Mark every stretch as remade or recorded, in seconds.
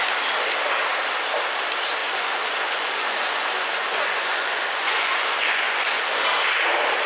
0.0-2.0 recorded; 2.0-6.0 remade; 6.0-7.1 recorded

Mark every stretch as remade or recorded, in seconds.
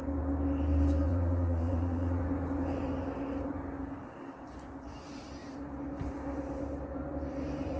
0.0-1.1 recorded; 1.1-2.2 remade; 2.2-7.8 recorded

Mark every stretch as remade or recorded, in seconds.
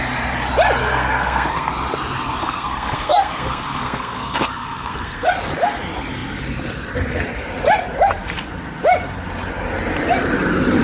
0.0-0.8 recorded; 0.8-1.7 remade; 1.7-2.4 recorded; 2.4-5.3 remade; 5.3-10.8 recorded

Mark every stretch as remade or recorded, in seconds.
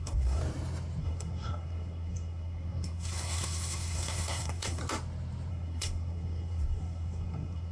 0.0-0.4 remade; 0.4-1.0 recorded; 1.0-4.8 remade; 4.8-5.5 recorded; 5.5-7.7 remade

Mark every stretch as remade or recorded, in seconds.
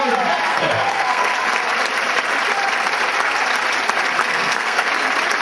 0.0-0.5 recorded; 0.5-1.3 remade; 1.3-4.3 recorded; 4.3-4.9 remade; 4.9-5.4 recorded